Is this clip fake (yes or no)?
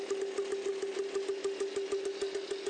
no